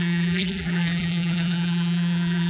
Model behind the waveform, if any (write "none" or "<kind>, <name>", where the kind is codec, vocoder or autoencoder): vocoder, BigVGAN v2